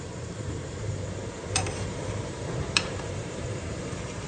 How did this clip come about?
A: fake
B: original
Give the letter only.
A